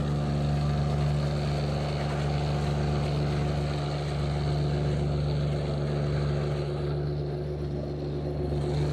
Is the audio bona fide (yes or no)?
yes